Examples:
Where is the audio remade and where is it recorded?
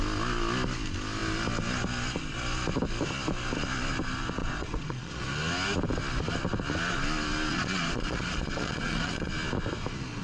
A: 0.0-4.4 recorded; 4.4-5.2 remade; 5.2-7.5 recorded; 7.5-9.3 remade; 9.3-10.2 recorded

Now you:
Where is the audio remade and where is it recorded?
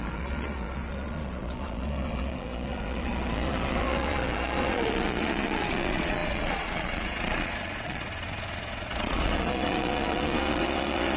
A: 0.0-11.2 remade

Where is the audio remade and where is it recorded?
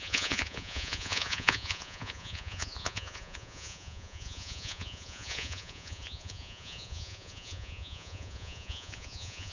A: 0.0-9.5 remade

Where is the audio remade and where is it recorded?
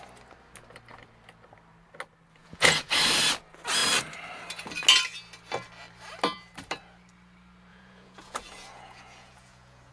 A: 0.0-2.4 recorded; 2.4-2.9 remade; 2.9-7.7 recorded; 7.7-9.9 remade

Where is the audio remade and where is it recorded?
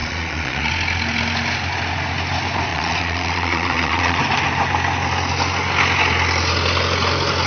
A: 0.0-0.7 remade; 0.7-2.7 recorded; 2.7-4.2 remade; 4.2-7.5 recorded